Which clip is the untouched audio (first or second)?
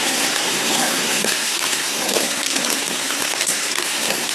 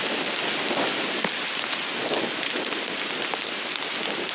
second